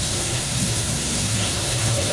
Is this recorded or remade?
remade